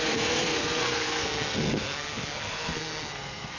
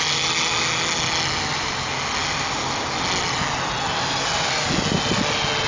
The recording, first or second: second